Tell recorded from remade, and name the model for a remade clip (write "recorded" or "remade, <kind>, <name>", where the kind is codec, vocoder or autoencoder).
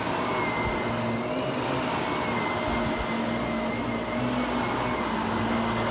recorded